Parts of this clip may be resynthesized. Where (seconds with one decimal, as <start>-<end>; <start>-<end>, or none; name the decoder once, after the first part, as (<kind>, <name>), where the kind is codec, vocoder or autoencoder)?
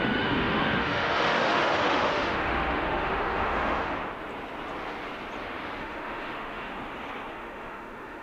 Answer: 0.0-3.9 (autoencoder, DAC-VAE); 5.8-6.8; 7.3-8.2